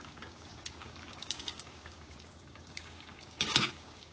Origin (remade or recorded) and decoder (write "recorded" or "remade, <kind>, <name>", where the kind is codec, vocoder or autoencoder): remade, codec, DAC